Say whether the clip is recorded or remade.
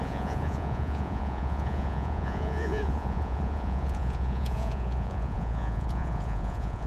remade